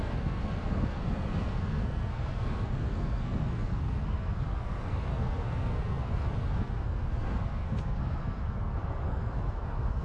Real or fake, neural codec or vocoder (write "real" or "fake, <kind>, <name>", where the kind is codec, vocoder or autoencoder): fake, codec, SNAC